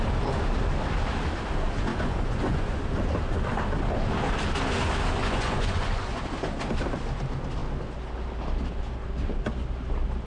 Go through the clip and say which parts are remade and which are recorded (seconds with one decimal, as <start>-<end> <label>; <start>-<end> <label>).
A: 0.0-1.9 recorded; 1.9-2.8 remade; 2.8-5.2 recorded; 5.2-6.2 remade; 6.2-10.3 recorded